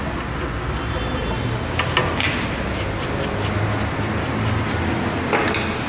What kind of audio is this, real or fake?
real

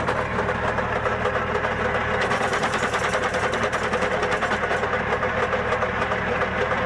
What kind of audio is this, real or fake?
real